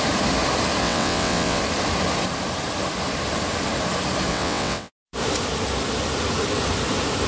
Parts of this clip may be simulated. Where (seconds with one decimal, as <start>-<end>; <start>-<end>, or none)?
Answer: 0.8-1.6; 4.3-4.9